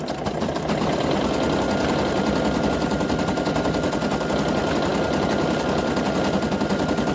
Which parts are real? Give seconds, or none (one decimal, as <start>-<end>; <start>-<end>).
0.0-7.1